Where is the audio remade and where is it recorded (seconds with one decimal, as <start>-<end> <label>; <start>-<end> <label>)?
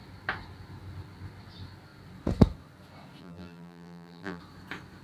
0.0-3.2 recorded; 3.2-4.4 remade; 4.4-5.0 recorded